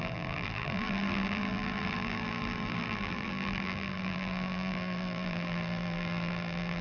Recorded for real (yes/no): no